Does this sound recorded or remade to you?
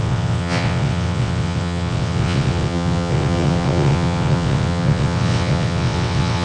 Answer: remade